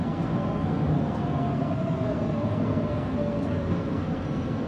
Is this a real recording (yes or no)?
no